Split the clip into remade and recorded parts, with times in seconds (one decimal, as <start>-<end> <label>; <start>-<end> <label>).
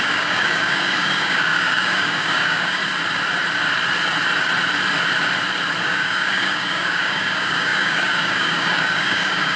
0.0-2.8 remade; 2.8-5.8 recorded; 5.8-9.6 remade